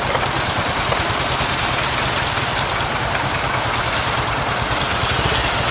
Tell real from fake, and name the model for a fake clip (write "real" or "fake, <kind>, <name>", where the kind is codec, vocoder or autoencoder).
real